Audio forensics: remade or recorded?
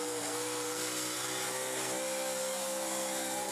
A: remade